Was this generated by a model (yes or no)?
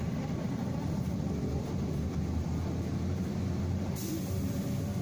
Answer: yes